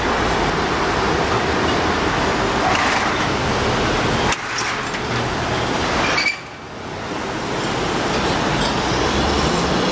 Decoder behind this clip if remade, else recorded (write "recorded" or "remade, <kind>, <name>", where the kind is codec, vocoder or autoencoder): recorded